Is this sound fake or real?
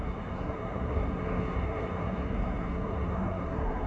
fake